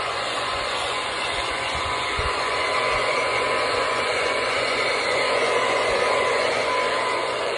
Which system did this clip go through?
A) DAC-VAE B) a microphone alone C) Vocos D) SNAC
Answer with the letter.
C